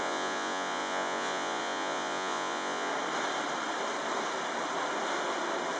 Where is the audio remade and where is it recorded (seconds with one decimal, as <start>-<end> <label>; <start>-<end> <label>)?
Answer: 0.0-2.9 remade; 2.9-5.8 recorded